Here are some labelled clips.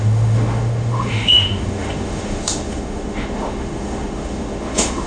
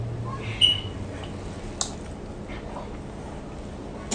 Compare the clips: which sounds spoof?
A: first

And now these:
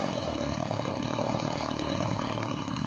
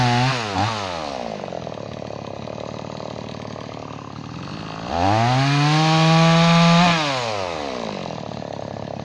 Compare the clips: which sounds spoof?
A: first